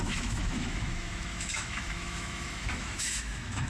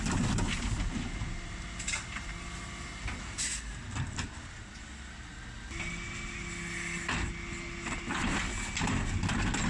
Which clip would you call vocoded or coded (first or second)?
first